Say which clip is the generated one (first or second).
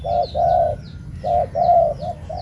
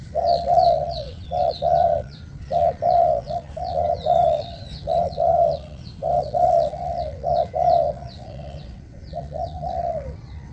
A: second